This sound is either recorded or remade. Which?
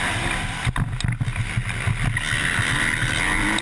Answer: recorded